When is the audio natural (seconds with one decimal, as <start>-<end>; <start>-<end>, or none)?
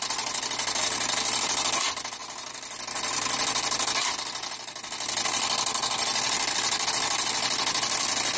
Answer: 0.0-8.4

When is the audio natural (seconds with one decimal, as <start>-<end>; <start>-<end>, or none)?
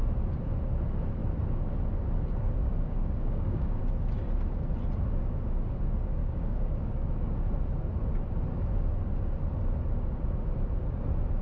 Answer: 0.0-2.6; 3.8-6.2; 7.1-11.4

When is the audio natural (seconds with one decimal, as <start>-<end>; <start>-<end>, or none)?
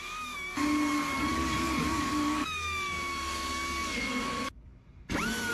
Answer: 4.7-5.5